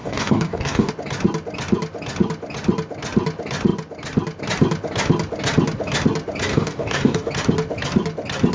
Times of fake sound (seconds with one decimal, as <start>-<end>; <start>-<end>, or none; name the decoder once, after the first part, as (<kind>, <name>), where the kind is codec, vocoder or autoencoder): 0.0-0.9 (codec, DAC); 6.5-7.3